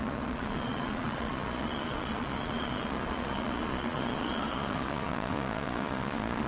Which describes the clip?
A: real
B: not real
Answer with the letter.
B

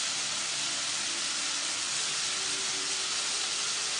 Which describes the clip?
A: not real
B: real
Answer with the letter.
B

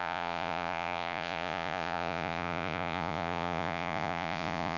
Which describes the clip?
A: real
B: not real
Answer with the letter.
B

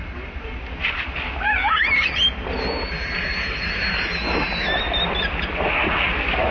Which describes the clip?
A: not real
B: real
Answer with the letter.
B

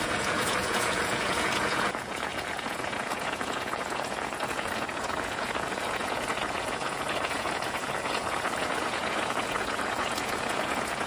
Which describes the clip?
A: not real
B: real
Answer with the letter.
A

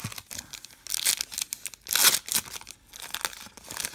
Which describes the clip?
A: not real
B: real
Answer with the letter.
B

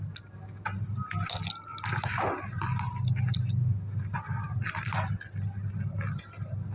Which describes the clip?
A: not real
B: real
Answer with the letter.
B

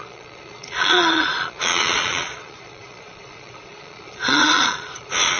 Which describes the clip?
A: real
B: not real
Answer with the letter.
B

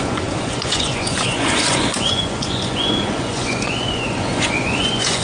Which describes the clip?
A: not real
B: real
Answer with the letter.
A